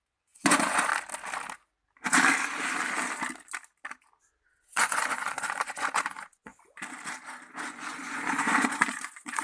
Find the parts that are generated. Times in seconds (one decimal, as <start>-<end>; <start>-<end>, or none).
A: 0.0-0.9; 4.2-6.5; 7.7-9.4

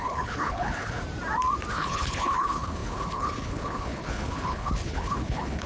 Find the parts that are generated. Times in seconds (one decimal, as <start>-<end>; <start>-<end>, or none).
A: 0.0-1.0; 1.7-5.7

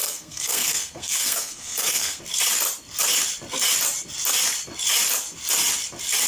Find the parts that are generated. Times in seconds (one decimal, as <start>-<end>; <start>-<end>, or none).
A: 0.0-2.2

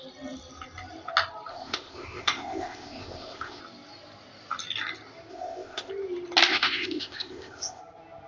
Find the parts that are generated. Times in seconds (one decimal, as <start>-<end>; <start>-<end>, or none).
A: 1.5-3.6; 5.3-5.9; 6.5-7.8

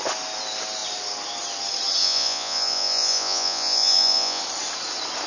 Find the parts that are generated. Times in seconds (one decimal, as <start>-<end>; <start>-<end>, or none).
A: 2.0-4.4

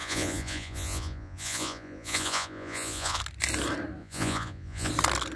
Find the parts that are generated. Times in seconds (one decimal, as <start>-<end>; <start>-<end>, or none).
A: 0.0-3.2; 4.0-4.9